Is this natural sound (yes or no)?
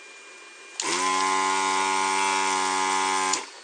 yes